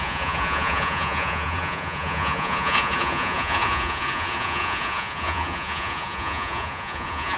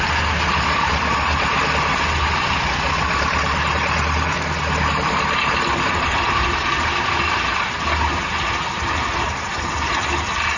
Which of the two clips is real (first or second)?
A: second